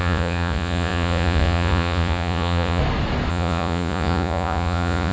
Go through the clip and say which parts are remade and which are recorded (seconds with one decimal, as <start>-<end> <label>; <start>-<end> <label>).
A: 0.0-2.8 remade; 2.8-3.3 recorded; 3.3-5.1 remade